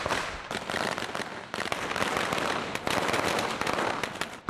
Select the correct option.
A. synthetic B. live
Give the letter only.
B